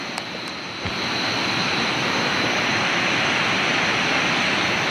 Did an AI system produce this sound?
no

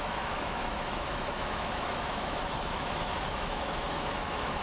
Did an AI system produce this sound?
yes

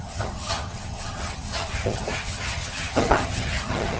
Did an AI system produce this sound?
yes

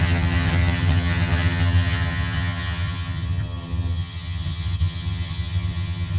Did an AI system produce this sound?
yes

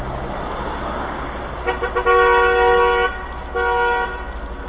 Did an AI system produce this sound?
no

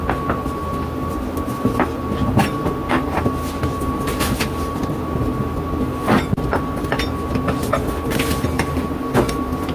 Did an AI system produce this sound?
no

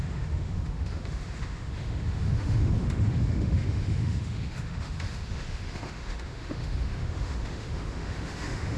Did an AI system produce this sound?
yes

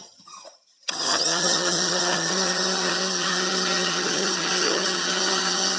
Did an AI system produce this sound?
yes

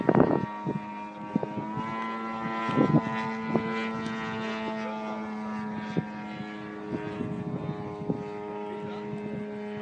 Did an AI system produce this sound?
no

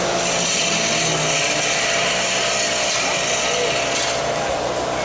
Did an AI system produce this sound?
no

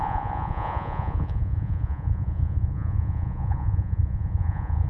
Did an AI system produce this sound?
yes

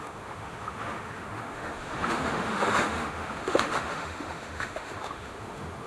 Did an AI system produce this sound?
yes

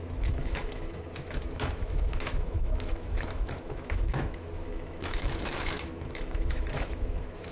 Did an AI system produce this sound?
yes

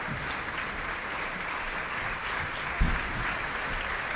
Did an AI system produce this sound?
no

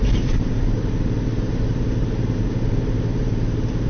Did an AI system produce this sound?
yes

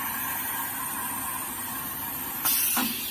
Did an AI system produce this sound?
no